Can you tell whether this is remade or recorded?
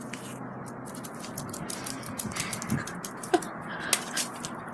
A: recorded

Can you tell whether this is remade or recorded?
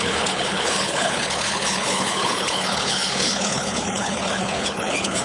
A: remade